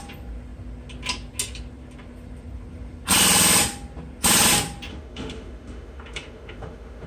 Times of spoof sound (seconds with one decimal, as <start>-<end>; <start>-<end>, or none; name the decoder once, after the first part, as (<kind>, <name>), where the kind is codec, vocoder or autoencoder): 4.9-7.1 (autoencoder, DAC-VAE)